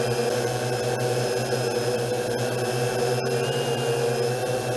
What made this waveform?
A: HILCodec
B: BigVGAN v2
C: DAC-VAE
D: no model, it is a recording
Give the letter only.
D